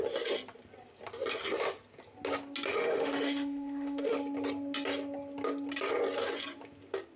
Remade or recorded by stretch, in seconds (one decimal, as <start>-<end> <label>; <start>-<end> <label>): 0.0-2.7 recorded; 2.7-4.2 remade; 4.2-7.2 recorded